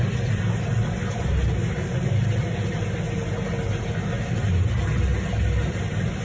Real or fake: real